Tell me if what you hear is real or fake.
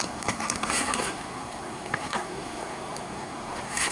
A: fake